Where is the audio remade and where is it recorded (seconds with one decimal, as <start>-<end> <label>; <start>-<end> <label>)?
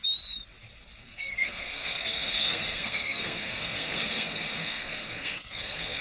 0.0-1.0 recorded; 1.0-6.0 remade